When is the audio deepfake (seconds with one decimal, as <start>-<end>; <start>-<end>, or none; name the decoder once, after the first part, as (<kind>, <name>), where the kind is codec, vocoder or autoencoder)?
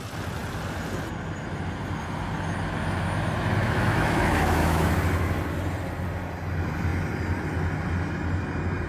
3.6-4.9 (autoencoder, DAC-VAE)